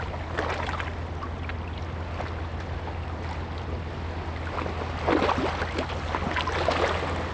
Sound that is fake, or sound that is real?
real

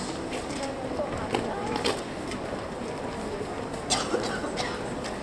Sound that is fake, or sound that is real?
real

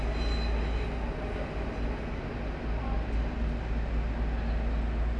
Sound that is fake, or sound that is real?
real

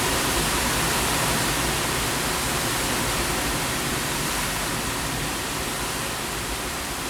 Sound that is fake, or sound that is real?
real